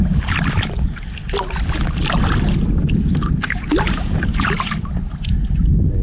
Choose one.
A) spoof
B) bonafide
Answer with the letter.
B